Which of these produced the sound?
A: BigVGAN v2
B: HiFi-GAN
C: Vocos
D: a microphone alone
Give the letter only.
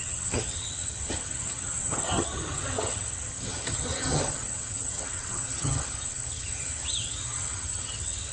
B